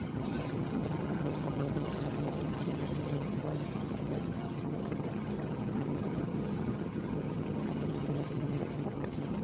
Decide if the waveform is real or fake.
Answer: fake